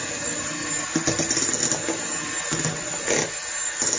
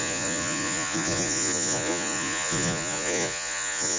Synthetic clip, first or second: second